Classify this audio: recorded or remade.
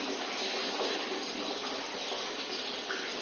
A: remade